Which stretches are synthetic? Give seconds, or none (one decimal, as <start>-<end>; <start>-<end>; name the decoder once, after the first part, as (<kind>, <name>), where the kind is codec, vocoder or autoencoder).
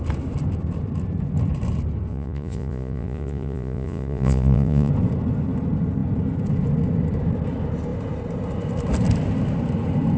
2.1-4.9 (vocoder, Vocos)